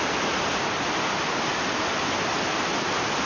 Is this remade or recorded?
recorded